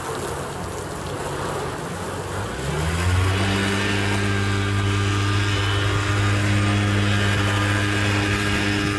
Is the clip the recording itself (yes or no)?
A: yes